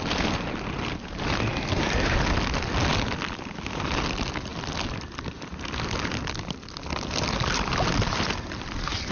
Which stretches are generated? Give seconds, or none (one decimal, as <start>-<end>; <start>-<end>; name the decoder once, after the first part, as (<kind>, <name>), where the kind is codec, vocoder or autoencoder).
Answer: none